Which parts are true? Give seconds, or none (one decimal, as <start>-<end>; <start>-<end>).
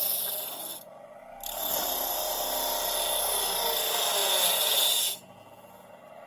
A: 0.0-4.2; 5.4-6.3